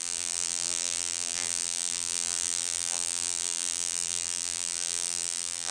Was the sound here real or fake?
fake